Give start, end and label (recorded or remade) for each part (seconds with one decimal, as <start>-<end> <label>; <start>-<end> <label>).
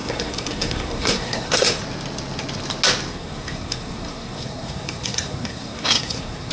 0.0-1.8 remade; 1.8-3.1 recorded; 3.1-6.5 remade